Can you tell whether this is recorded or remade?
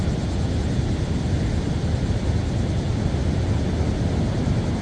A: recorded